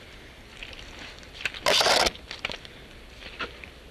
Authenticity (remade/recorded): recorded